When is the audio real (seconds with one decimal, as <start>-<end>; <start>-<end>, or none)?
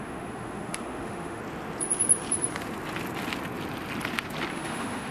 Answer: 1.4-4.5